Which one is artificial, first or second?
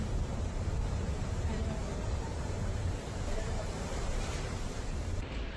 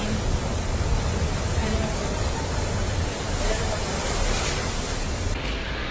first